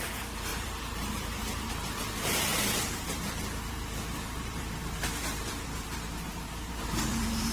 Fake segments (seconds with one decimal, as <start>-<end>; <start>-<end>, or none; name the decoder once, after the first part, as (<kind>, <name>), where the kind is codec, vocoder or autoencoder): 0.0-7.5 (vocoder, BigVGAN v2)